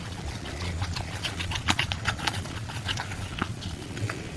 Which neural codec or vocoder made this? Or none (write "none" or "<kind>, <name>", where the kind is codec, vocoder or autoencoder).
vocoder, Vocos